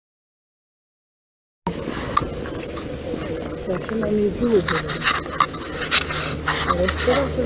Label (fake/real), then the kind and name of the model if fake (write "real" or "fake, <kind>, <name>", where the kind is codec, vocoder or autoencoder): real